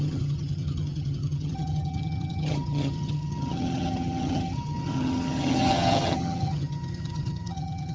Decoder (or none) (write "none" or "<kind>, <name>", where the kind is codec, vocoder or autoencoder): vocoder, HiFi-GAN